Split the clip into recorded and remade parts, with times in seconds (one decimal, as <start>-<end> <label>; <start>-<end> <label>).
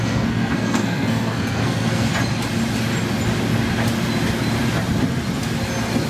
0.0-2.1 remade; 2.1-6.1 recorded